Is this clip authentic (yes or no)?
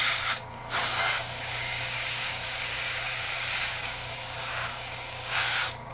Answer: no